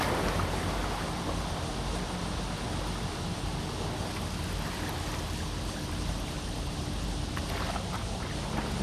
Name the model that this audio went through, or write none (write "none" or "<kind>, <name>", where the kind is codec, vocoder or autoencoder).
none